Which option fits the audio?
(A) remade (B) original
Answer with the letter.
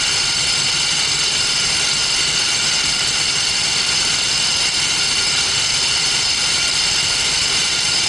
B